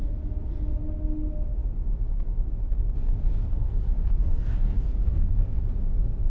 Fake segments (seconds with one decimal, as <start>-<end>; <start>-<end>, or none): 3.5-5.6